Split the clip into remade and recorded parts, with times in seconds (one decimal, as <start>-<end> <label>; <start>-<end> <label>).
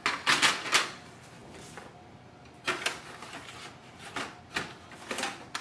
0.0-5.6 recorded